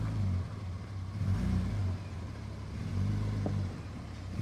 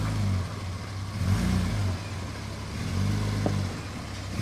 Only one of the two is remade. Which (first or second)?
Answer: first